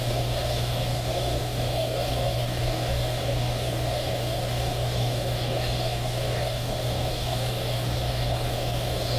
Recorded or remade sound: remade